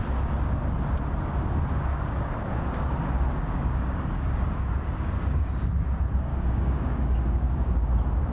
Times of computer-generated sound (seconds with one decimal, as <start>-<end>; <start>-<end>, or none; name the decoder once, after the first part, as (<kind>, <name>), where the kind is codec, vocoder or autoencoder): 1.9-5.7 (codec, DAC); 6.3-7.7